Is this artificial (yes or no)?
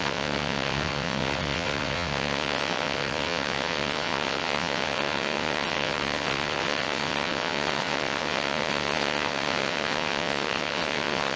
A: yes